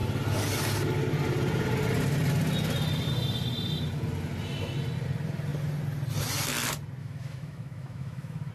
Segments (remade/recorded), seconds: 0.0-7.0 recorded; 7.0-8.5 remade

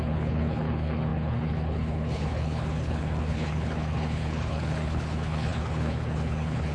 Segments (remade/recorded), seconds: 0.0-6.7 remade